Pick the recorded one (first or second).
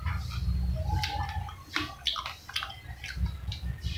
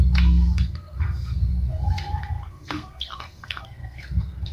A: first